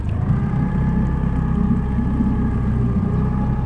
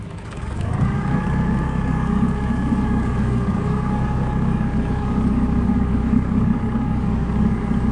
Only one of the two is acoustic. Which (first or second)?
first